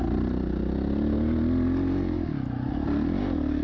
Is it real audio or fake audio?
real